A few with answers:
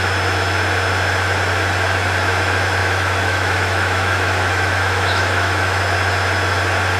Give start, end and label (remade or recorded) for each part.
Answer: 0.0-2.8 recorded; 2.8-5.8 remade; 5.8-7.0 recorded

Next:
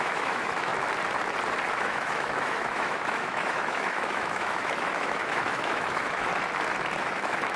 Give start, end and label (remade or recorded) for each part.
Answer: 0.0-0.7 remade; 0.7-1.7 recorded; 1.7-6.3 remade; 6.3-7.0 recorded; 7.0-7.6 remade

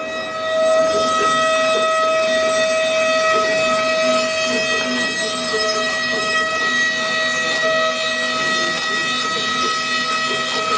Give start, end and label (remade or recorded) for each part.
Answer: 0.0-5.5 recorded; 5.5-6.6 remade; 6.6-10.8 recorded

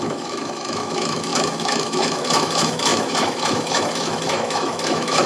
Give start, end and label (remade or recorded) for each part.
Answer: 0.0-5.3 remade